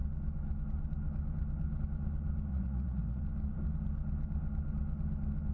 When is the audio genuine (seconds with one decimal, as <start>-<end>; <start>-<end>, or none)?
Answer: 0.0-2.5; 3.2-5.5